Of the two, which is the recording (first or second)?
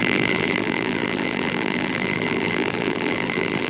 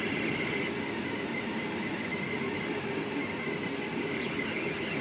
second